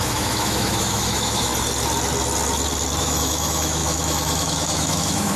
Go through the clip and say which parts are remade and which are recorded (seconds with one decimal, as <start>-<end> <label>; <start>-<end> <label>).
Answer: 0.0-1.5 remade; 1.5-3.0 recorded; 3.0-5.4 remade